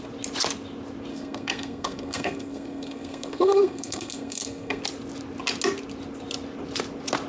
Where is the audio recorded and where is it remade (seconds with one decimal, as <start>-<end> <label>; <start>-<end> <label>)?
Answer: 0.0-1.1 recorded; 1.1-4.8 remade; 4.8-7.3 recorded